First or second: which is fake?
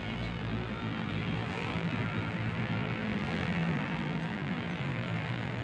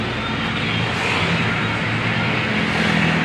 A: first